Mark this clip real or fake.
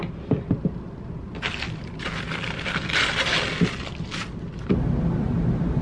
real